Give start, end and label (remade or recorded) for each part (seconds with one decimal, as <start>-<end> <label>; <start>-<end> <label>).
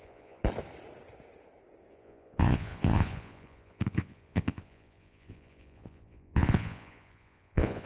0.0-0.4 remade; 0.4-1.9 recorded; 1.9-7.9 remade